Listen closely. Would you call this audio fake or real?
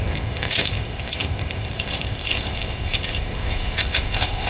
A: fake